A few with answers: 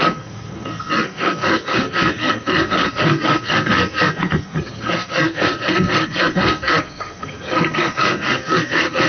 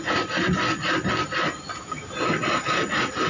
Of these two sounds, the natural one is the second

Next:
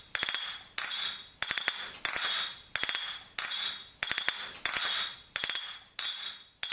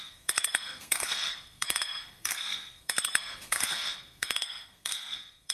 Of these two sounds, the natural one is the first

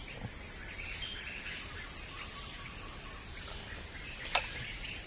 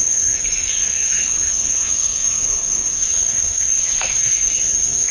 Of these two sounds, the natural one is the first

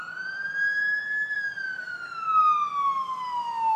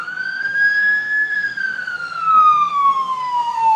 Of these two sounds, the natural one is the first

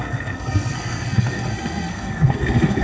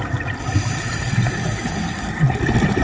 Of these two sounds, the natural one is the second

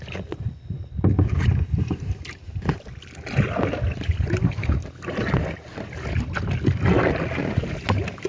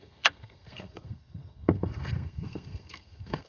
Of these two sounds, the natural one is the first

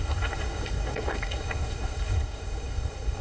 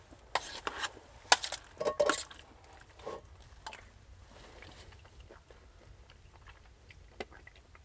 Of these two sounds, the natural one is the second